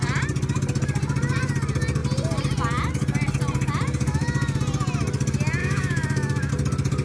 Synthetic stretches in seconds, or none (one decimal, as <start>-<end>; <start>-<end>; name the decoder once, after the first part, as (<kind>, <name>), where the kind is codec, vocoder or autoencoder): 4.1-4.6 (autoencoder, DAC-VAE); 5.6-6.5